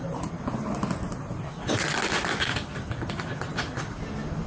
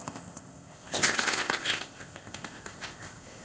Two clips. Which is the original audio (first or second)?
first